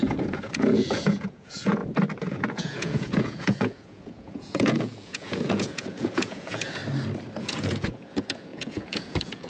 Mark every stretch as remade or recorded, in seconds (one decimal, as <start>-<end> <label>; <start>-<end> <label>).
0.0-1.8 remade; 1.8-2.3 recorded; 2.3-6.8 remade; 6.8-7.4 recorded; 7.4-9.5 remade